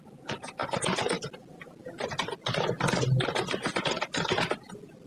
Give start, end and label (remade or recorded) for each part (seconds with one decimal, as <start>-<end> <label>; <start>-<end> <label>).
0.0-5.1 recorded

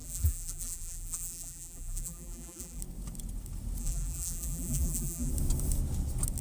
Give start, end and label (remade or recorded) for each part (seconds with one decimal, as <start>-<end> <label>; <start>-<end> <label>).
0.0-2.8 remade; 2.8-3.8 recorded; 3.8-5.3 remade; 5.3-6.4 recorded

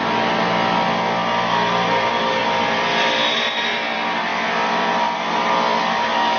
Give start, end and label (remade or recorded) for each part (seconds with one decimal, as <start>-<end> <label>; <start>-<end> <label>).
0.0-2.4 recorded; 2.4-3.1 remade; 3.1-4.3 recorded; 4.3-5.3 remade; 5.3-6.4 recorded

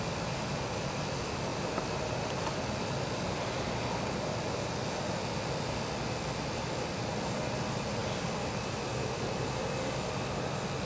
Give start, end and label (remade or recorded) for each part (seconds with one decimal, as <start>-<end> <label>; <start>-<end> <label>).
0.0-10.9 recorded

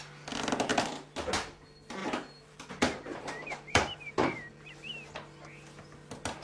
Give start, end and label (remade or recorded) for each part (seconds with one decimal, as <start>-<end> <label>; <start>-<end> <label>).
0.0-2.0 recorded; 2.0-2.7 remade; 2.7-3.1 recorded; 3.1-4.9 remade; 4.9-6.4 recorded

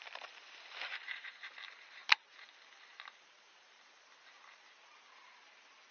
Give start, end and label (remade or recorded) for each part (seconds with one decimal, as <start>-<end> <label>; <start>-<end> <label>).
0.0-0.9 recorded; 0.9-1.5 remade; 1.5-2.0 recorded; 2.0-3.8 remade; 3.8-5.9 recorded